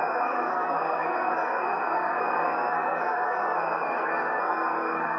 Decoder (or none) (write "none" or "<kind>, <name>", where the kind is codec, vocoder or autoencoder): codec, SNAC